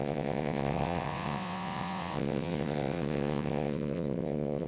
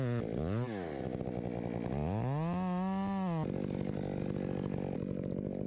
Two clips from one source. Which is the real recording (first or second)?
second